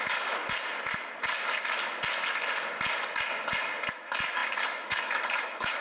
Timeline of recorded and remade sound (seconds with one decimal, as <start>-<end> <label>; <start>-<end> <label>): 0.0-0.4 remade; 0.4-3.9 recorded; 3.9-5.8 remade